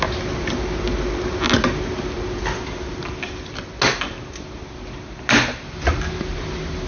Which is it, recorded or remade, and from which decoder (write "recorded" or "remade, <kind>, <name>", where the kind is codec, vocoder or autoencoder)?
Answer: recorded